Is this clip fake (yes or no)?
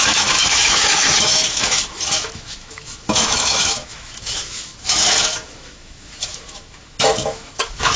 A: yes